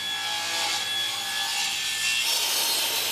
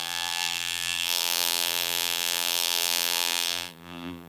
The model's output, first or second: second